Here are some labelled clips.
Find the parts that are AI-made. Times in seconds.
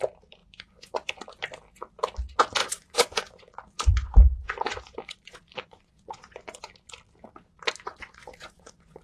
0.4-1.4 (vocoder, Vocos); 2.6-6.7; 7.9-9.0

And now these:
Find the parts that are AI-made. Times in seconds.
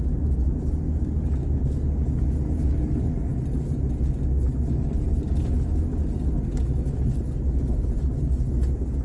none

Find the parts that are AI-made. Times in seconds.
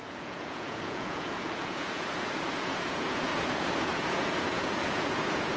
0.0-5.6 (vocoder, Vocos)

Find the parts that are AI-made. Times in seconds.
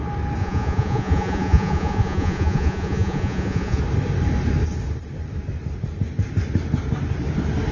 0.4-3.8 (vocoder, Vocos)